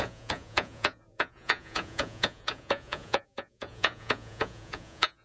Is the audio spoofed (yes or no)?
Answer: yes